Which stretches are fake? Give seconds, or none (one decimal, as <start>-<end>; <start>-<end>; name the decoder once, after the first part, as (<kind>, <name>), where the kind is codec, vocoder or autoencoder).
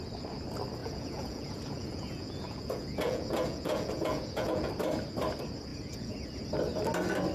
0.8-4.7 (vocoder, Vocos); 5.7-6.4